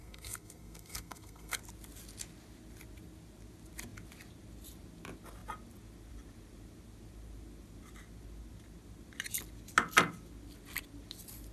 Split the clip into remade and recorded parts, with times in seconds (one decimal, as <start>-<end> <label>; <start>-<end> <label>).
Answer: 0.0-1.6 remade; 1.6-11.5 recorded